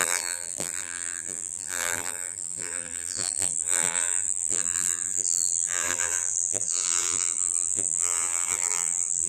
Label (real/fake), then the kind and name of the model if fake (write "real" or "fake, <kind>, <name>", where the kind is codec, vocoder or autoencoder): fake, vocoder, BigVGAN v2